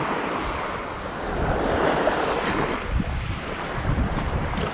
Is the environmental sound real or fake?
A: real